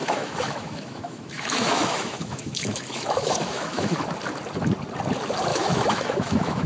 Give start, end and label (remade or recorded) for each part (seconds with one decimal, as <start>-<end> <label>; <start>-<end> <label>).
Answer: 0.0-4.0 remade; 4.0-5.5 recorded; 5.5-6.7 remade